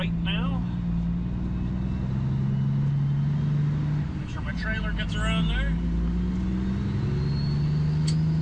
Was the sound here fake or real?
real